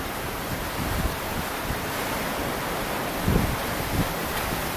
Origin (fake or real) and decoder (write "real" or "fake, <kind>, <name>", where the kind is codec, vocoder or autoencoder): real